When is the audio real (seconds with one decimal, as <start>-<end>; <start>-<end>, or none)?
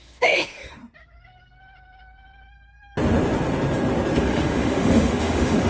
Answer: 0.8-4.2